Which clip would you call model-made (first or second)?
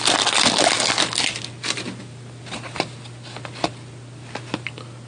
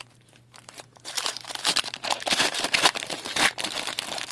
second